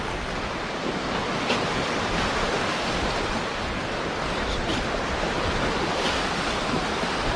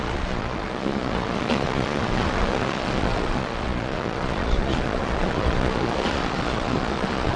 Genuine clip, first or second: first